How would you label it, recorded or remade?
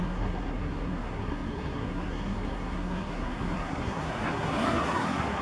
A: remade